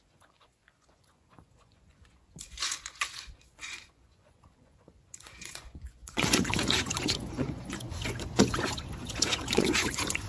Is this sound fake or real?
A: fake